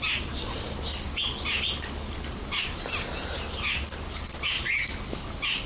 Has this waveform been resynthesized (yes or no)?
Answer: no